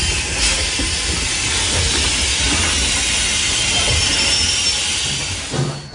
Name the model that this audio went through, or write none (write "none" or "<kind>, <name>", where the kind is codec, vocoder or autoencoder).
none